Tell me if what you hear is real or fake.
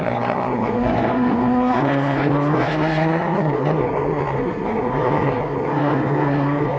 fake